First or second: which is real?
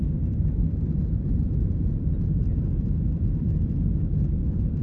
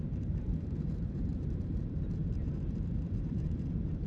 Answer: first